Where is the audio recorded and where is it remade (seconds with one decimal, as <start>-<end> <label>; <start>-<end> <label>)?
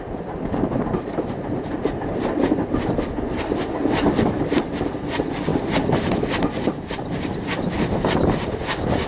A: 0.0-5.5 recorded; 5.5-9.1 remade